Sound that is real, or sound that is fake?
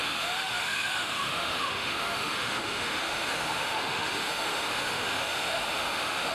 fake